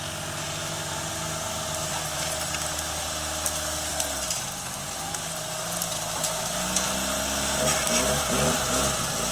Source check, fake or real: real